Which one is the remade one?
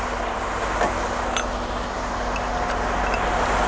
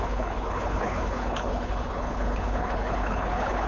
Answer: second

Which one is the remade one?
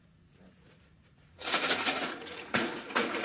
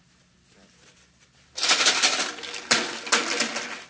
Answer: first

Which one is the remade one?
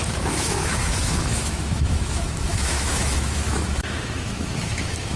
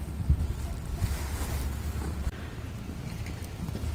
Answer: first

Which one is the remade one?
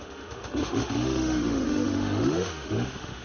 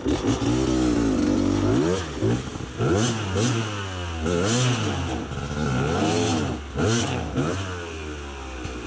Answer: first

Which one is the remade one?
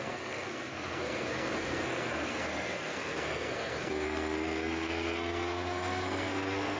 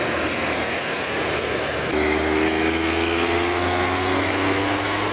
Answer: first